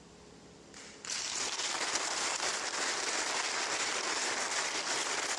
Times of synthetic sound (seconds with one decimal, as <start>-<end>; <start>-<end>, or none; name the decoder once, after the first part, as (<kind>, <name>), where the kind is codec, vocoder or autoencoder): none